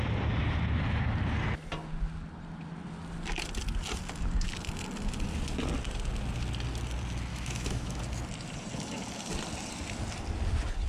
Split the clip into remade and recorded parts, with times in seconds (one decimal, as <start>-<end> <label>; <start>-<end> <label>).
0.0-7.3 recorded; 7.3-8.0 remade; 8.0-10.9 recorded